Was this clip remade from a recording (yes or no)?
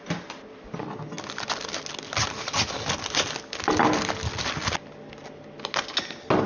no